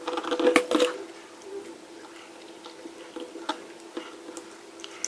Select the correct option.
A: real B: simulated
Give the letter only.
A